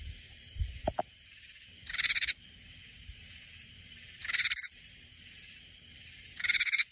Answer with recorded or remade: remade